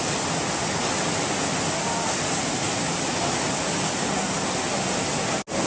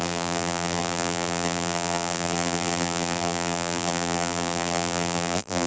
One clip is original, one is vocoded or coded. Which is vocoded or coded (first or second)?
second